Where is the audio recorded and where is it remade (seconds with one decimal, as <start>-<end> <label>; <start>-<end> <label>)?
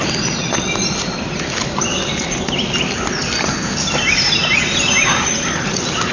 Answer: 0.0-6.1 recorded